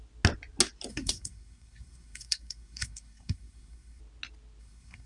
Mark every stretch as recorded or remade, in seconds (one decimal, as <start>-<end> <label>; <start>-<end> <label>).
0.0-0.9 recorded; 0.9-4.0 remade; 4.0-4.6 recorded; 4.6-5.1 remade